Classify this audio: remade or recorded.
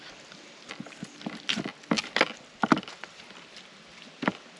recorded